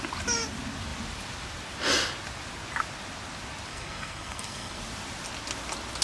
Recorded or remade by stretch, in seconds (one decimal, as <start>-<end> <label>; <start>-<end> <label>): 0.0-3.7 recorded; 3.7-4.8 remade; 4.8-6.0 recorded